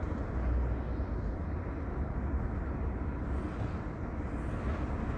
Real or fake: real